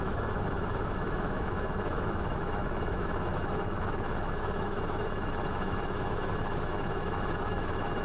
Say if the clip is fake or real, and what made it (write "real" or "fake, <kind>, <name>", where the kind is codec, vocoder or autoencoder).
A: fake, autoencoder, DAC-VAE